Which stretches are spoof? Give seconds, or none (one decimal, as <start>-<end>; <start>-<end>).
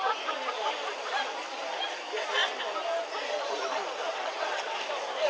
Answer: 4.0-4.8